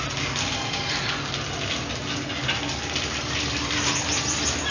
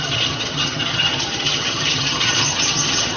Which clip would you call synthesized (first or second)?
second